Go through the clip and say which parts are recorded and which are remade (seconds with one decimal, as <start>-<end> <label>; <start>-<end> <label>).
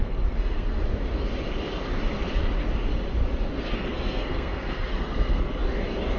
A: 0.0-0.8 remade; 0.8-3.5 recorded; 3.5-5.6 remade; 5.6-6.2 recorded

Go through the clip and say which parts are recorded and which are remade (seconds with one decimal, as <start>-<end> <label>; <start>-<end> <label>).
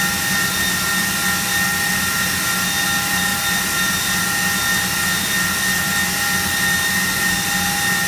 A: 0.0-8.1 recorded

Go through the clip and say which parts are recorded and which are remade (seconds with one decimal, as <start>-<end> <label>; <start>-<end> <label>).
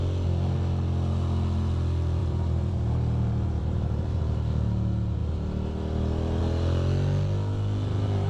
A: 0.0-2.2 recorded; 2.2-4.2 remade; 4.2-8.3 recorded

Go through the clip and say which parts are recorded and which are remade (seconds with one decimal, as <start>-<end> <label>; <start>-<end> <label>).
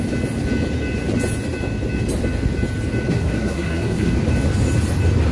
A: 0.0-3.1 recorded; 3.1-4.1 remade; 4.1-5.3 recorded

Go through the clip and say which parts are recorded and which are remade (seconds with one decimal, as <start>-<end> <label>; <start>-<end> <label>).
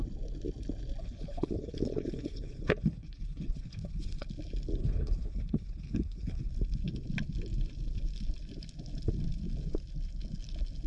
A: 0.0-1.0 recorded; 1.0-4.3 remade; 4.3-4.8 recorded; 4.8-6.5 remade; 6.5-10.9 recorded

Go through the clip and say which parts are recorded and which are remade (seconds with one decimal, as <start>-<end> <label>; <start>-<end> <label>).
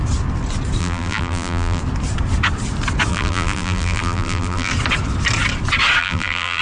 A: 0.0-0.8 recorded; 0.8-1.8 remade; 1.8-3.1 recorded; 3.1-4.7 remade; 4.7-6.0 recorded; 6.0-6.6 remade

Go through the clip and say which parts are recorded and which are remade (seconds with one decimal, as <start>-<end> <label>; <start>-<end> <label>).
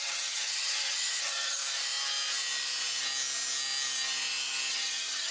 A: 0.0-1.6 remade; 1.6-4.7 recorded; 4.7-5.3 remade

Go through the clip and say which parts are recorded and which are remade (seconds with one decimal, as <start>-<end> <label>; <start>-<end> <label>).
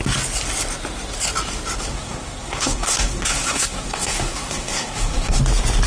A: 0.0-1.9 recorded; 1.9-5.4 remade; 5.4-5.9 recorded